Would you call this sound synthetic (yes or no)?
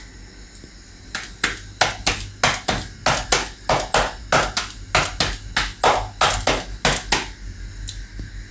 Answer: no